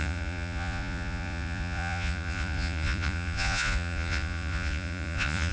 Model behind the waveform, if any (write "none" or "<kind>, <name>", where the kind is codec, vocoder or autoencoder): vocoder, Vocos